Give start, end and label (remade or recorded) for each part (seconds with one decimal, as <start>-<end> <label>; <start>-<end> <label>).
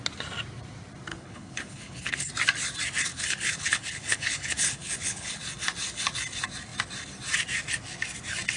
0.0-1.1 recorded; 1.1-2.3 remade; 2.3-3.1 recorded; 3.1-5.4 remade; 5.4-8.6 recorded